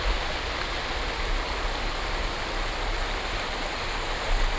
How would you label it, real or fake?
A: real